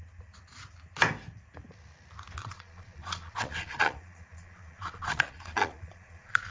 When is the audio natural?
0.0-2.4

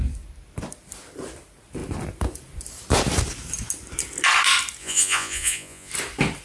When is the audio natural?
0.0-4.8; 5.9-6.4